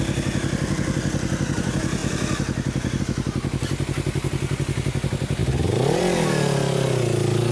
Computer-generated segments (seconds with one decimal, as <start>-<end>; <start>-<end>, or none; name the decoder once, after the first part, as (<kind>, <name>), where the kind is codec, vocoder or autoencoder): 5.4-6.0 (vocoder, BigVGAN v2)